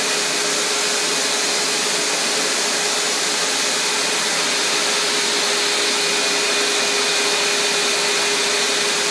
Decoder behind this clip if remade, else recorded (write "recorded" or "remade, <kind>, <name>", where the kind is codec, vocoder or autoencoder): recorded